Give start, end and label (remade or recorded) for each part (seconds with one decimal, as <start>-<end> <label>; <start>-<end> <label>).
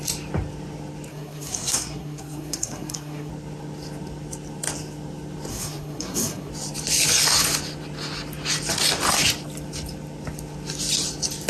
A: 0.0-1.1 recorded; 1.1-3.3 remade; 3.3-5.5 recorded; 5.5-6.5 remade; 6.5-11.5 recorded